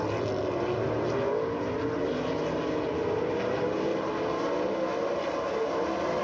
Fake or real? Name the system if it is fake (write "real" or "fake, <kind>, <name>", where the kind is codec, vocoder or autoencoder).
real